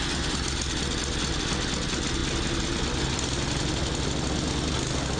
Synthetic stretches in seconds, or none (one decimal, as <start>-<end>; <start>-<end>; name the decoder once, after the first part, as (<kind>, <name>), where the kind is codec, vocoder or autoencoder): none